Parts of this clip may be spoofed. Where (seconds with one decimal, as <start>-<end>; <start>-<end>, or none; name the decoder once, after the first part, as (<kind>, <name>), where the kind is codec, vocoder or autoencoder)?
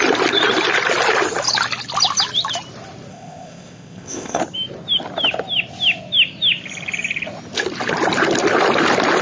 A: 3.1-4.4 (codec, ZipCodec)